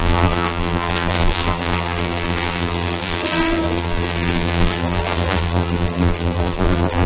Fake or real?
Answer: fake